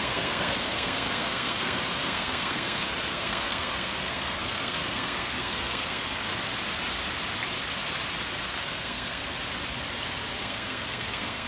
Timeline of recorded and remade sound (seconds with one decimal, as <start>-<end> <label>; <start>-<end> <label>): 0.0-6.3 remade; 6.3-8.4 recorded; 8.4-9.2 remade; 9.2-10.4 recorded; 10.4-11.5 remade